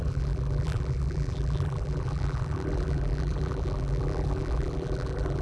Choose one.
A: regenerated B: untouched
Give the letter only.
A